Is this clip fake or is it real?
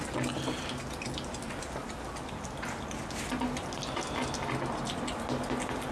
real